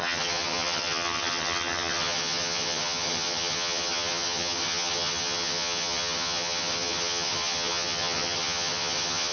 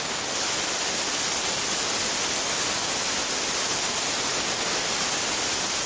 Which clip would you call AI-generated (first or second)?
first